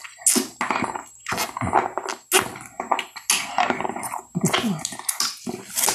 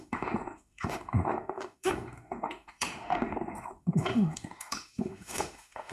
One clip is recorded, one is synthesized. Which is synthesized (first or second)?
second